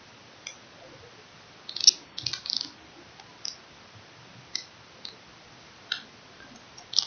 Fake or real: real